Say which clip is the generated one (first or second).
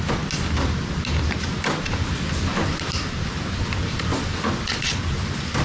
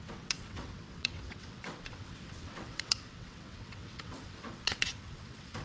second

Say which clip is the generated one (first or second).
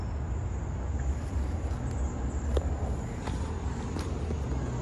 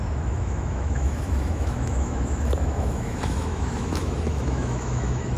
second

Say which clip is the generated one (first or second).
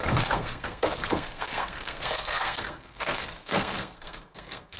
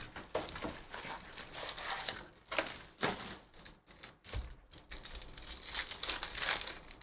first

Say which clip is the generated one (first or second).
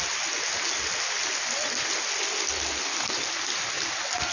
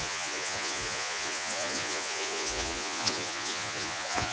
second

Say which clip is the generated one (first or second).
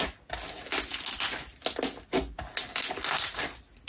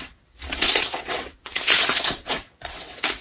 second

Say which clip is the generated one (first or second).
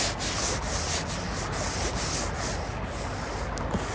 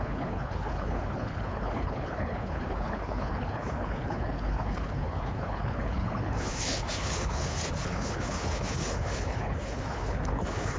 second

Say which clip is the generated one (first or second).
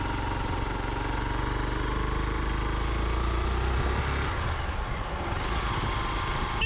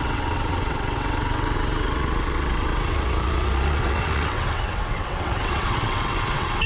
second